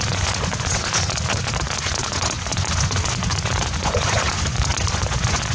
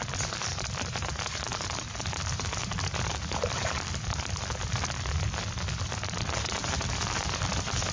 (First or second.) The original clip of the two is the second